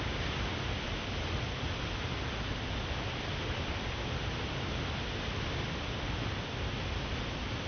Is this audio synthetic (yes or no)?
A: no